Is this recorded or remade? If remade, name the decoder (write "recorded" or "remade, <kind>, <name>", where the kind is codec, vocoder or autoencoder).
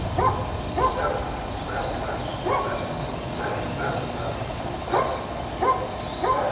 recorded